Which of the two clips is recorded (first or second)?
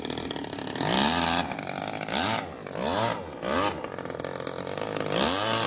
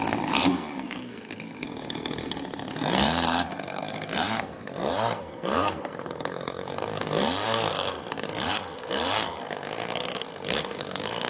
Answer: first